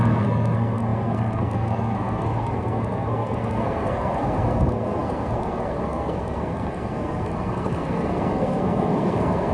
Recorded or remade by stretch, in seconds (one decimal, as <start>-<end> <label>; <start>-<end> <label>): 0.0-9.5 remade